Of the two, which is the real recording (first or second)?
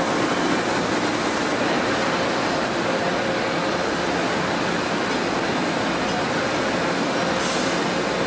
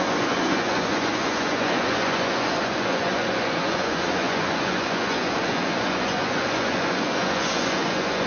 first